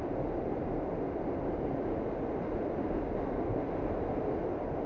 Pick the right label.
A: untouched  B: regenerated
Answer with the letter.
A